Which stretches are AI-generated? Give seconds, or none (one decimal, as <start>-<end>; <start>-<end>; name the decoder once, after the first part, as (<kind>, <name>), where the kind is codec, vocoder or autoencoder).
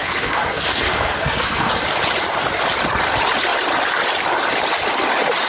0.0-1.7 (codec, SNAC)